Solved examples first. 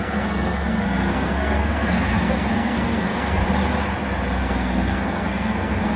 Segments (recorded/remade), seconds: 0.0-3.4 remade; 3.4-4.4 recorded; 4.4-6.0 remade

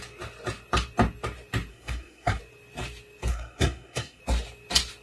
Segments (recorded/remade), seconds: 0.0-1.7 recorded; 1.7-2.4 remade; 2.4-3.3 recorded; 3.3-4.2 remade; 4.2-5.0 recorded

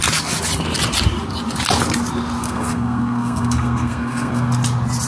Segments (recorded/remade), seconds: 0.0-2.4 recorded; 2.4-4.5 remade; 4.5-5.1 recorded

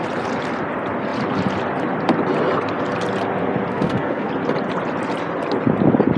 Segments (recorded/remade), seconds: 0.0-3.7 recorded; 3.7-4.3 remade; 4.3-6.2 recorded

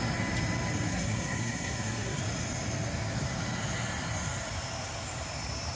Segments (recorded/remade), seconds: 0.0-0.9 recorded; 0.9-2.2 remade; 2.2-5.8 recorded

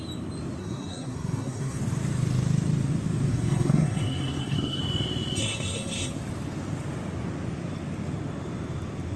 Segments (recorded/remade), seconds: 0.0-0.6 recorded; 0.6-1.8 remade; 1.8-3.3 recorded; 3.3-4.8 remade; 4.8-5.4 recorded; 5.4-6.1 remade; 6.1-9.2 recorded

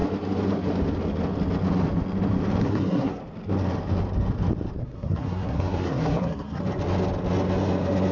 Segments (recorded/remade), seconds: 0.0-2.6 recorded; 2.6-3.2 remade; 3.2-4.8 recorded; 4.8-6.6 remade; 6.6-8.1 recorded

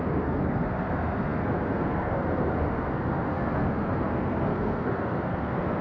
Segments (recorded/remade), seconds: 0.0-5.8 remade